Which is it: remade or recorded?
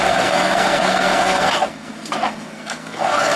remade